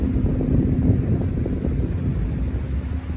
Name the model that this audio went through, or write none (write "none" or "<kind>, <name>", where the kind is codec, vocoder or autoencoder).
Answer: none